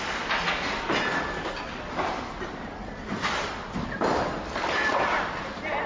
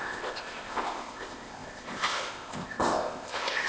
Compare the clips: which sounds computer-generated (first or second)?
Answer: second